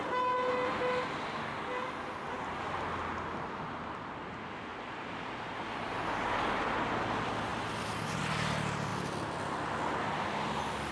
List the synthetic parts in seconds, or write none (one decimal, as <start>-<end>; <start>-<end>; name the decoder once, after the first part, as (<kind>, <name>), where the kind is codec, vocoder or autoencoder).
4.7-5.3 (vocoder, BigVGAN v2)